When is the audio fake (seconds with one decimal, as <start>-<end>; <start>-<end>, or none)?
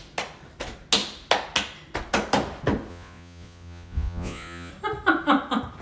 2.9-4.7